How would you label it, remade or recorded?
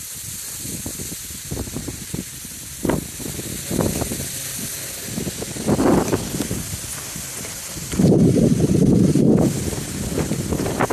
recorded